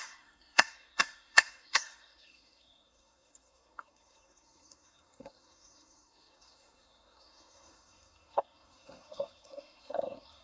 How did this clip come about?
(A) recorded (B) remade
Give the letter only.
B